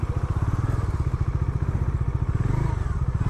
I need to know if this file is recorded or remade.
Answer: recorded